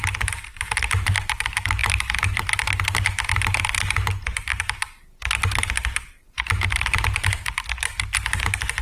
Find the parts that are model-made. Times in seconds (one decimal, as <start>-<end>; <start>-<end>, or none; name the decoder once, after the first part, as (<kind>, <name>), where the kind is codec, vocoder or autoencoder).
none